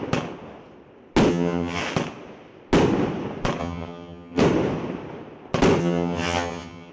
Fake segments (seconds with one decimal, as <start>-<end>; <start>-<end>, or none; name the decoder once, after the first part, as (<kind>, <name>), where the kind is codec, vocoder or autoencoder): 1.3-1.8 (vocoder, HiFi-GAN); 3.6-4.4; 5.8-6.9